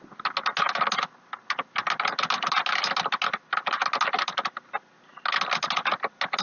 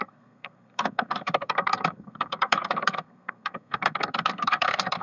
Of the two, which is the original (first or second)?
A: first